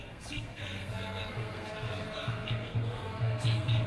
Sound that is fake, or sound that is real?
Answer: fake